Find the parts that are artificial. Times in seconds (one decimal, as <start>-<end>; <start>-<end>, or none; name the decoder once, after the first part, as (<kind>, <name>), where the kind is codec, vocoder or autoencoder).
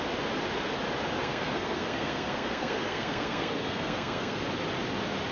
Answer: 1.2-4.4 (codec, SNAC)